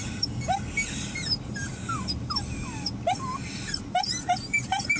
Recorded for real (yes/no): yes